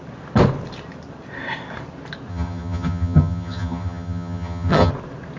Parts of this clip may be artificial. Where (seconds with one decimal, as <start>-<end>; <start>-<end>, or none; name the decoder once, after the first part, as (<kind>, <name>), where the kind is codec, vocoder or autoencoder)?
2.3-4.9 (vocoder, HiFi-GAN)